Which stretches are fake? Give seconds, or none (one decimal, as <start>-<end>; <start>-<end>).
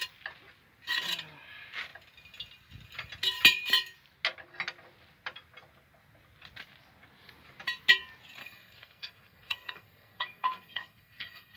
8.4-11.6